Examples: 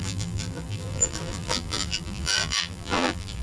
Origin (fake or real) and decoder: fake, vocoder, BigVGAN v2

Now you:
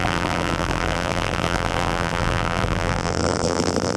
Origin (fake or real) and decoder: fake, vocoder, BigVGAN v2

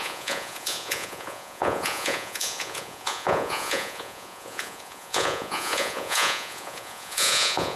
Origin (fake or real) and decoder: fake, vocoder, Vocos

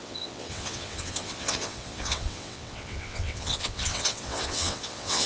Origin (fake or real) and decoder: fake, vocoder, WaveNeXt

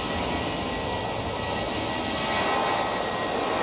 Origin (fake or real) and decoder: real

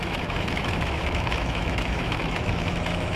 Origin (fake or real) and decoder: fake, autoencoder, DAC-VAE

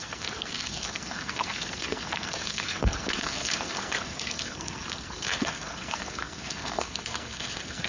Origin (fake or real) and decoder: fake, codec, SNAC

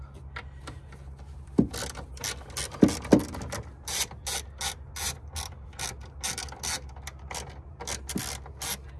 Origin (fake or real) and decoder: real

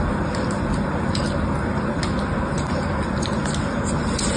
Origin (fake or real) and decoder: real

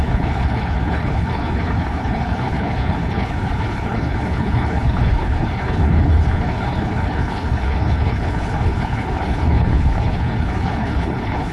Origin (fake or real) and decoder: fake, codec, HILCodec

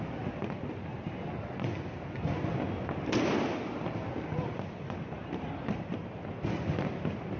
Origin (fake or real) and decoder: real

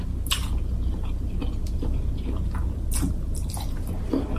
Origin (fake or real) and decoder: real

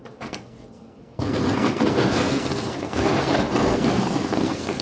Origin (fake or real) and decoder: fake, codec, SNAC